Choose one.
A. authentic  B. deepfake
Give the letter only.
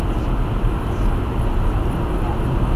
A